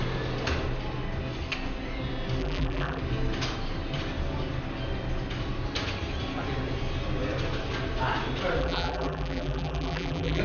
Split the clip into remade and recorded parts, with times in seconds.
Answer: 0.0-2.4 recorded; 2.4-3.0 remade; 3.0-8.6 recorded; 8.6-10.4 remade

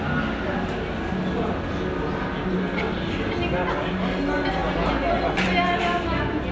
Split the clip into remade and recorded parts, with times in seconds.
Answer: 0.0-6.5 recorded

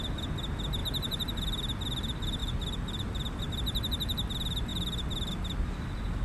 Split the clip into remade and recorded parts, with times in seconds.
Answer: 0.0-0.8 recorded; 0.8-1.3 remade; 1.3-2.4 recorded; 2.4-3.4 remade; 3.4-6.2 recorded

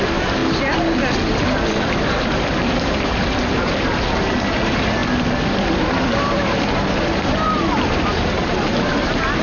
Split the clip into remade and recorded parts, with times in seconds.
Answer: 0.0-0.4 remade; 0.4-1.3 recorded; 1.3-5.0 remade; 5.0-5.6 recorded; 5.6-9.4 remade

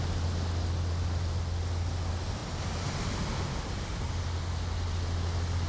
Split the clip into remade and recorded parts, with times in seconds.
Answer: 0.0-5.7 recorded

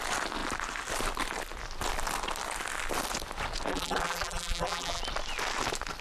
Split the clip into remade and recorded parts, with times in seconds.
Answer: 0.0-3.7 recorded; 3.7-5.0 remade; 5.0-6.0 recorded

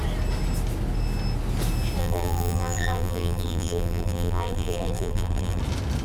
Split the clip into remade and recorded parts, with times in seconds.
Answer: 0.0-2.0 recorded; 2.0-5.6 remade; 5.6-6.0 recorded

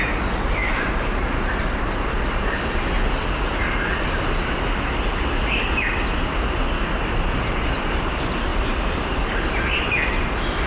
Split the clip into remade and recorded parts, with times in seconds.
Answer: 0.0-0.6 recorded; 0.6-2.1 remade; 2.1-8.5 recorded; 8.5-9.8 remade; 9.8-10.7 recorded